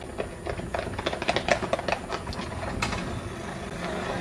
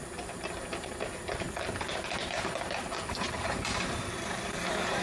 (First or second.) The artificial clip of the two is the second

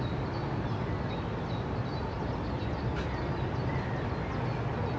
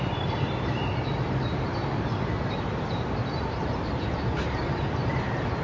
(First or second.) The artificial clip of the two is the second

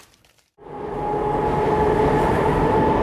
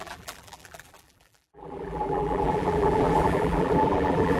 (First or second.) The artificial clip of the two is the second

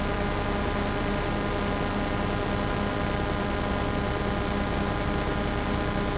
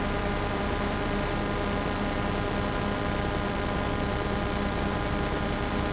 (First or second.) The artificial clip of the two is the second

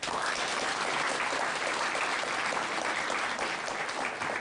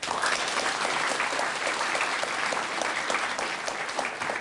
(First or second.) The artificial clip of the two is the second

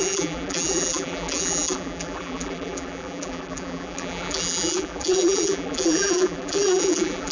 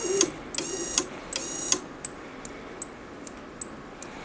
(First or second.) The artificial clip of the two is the first